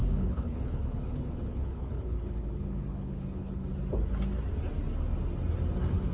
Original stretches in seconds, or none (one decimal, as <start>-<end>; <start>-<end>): 3.7-6.1